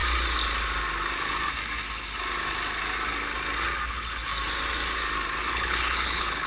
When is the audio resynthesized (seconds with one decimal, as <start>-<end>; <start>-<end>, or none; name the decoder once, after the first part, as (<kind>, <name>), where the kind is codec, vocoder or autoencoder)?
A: 3.9-4.3 (codec, HILCodec); 5.5-6.5